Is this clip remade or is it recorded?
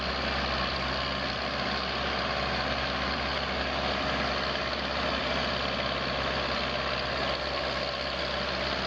recorded